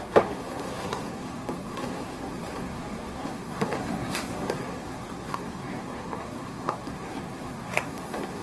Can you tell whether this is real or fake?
fake